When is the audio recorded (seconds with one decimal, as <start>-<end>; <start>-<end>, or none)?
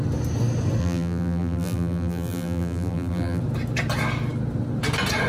0.0-0.8; 3.4-5.3